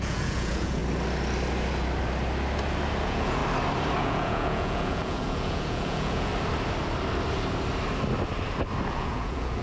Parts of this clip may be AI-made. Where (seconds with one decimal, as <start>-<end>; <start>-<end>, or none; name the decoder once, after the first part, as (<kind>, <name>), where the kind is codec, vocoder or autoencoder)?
0.0-0.8 (vocoder, Vocos); 3.0-3.4; 4.0-6.3; 8.9-9.6